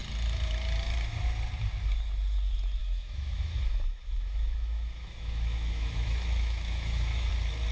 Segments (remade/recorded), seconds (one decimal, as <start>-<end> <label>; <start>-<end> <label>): 0.0-2.8 recorded; 2.8-7.3 remade; 7.3-7.7 recorded